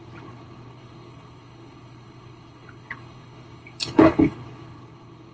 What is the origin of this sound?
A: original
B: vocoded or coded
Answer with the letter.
B